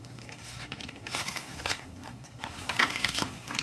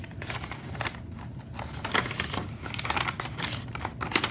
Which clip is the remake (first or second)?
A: first